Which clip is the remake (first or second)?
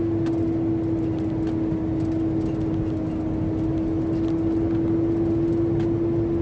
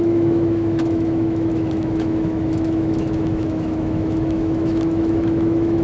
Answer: second